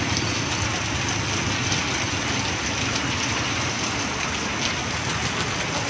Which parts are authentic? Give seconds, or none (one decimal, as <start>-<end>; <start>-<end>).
0.0-5.9